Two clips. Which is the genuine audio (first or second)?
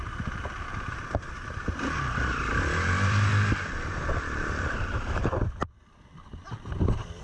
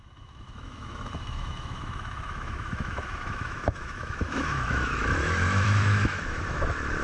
first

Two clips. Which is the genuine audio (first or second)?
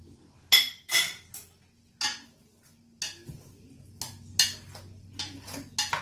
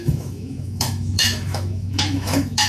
first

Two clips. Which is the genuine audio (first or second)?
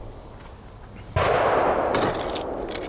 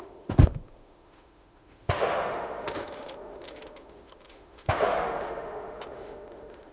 first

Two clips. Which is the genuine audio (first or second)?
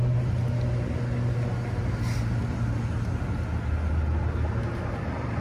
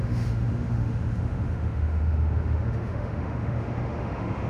first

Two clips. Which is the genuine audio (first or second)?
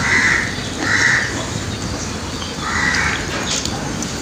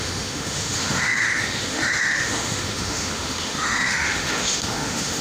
first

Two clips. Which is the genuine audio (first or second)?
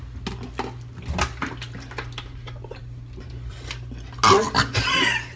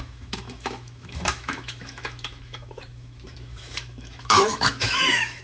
first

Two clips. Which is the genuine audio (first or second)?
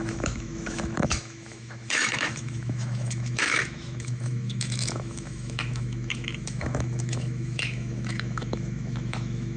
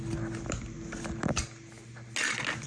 second